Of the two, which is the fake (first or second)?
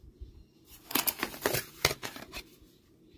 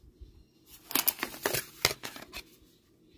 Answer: first